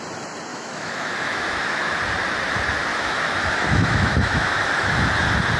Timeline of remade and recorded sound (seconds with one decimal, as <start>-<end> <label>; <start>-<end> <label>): 0.0-0.5 recorded; 0.5-1.9 remade; 1.9-2.9 recorded; 2.9-4.9 remade; 4.9-5.6 recorded